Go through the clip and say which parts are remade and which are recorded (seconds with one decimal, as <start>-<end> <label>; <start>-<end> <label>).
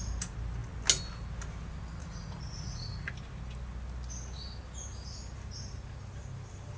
0.0-2.0 recorded; 2.0-3.1 remade; 3.1-6.8 recorded